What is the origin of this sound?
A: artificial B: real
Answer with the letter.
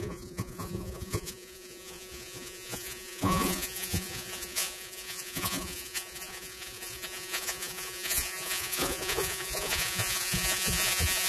A